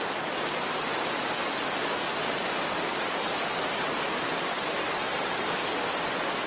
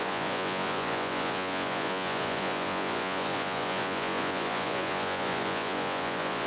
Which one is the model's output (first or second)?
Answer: second